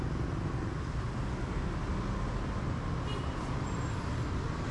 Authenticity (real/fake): real